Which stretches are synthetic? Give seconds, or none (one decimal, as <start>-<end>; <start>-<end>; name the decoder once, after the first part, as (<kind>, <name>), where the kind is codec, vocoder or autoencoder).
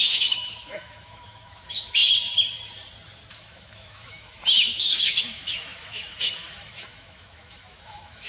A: 0.0-2.0 (autoencoder, DAC-VAE); 3.3-8.3